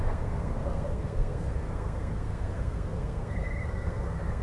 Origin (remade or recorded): remade